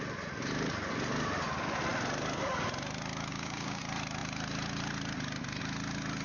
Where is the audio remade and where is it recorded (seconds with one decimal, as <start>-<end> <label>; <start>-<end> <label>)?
0.0-3.3 recorded; 3.3-3.8 remade; 3.8-6.2 recorded